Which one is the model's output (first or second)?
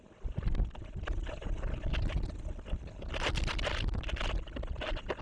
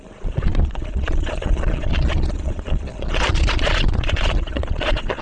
second